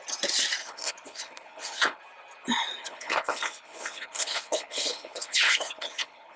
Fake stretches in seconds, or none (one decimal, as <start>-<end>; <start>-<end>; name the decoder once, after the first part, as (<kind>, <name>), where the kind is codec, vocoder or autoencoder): 0.6-2.0 (codec, HILCodec); 2.8-6.4